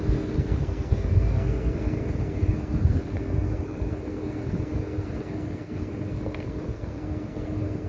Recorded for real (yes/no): no